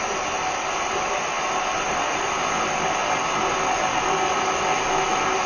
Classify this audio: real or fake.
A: real